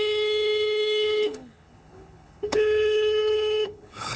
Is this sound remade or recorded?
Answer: remade